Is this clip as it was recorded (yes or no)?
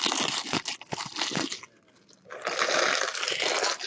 yes